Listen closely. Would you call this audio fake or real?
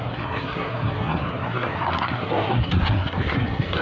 fake